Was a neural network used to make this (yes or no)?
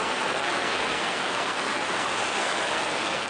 yes